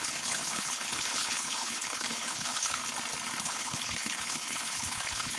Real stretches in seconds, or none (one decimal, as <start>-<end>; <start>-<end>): 2.8-3.4